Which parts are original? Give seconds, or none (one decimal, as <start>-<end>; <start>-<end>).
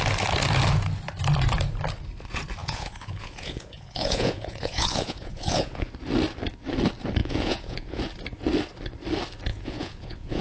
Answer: 0.0-2.6; 5.9-7.2; 8.0-9.5